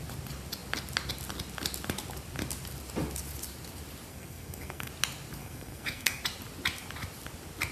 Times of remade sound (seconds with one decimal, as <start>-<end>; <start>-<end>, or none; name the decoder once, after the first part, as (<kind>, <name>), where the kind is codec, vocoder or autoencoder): 4.1-4.9 (codec, SNAC); 5.4-6.2